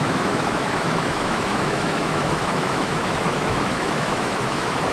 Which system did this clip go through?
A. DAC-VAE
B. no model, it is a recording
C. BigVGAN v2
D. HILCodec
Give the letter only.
A